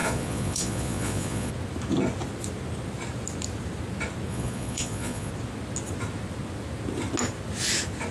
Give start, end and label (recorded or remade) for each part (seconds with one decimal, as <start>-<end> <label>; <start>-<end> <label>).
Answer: 0.0-1.5 remade; 1.5-4.3 recorded; 4.3-5.3 remade; 5.3-8.1 recorded